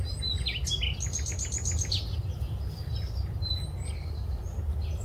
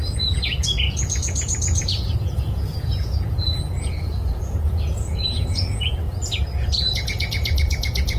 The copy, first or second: second